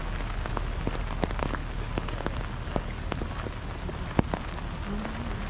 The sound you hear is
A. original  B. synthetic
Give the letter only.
A